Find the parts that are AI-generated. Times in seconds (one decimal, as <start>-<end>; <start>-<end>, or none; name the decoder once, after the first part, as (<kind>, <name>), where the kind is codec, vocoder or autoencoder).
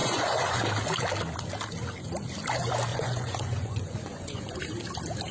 0.0-0.7 (vocoder, Vocos); 2.9-4.6